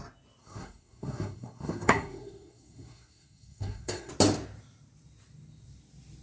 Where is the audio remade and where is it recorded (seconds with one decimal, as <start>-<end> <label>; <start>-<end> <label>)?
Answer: 0.0-0.4 recorded; 0.4-4.1 remade; 4.1-6.2 recorded